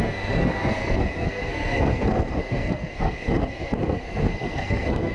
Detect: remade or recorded remade